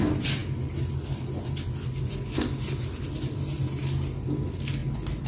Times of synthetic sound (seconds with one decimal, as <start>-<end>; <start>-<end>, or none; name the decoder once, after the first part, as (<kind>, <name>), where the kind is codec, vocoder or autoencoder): none